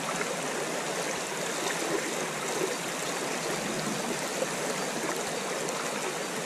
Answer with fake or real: real